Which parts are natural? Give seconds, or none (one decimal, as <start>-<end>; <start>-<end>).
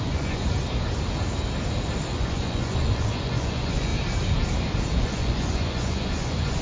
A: 0.4-2.1; 3.9-5.0